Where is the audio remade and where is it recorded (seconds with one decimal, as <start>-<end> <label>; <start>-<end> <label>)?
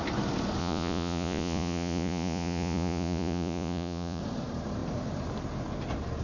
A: 0.0-0.6 recorded; 0.6-4.2 remade; 4.2-6.2 recorded